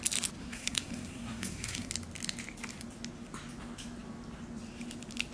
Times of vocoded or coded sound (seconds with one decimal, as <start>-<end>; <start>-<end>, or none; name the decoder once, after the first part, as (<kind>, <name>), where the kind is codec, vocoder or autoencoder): 0.4-1.9 (codec, SNAC)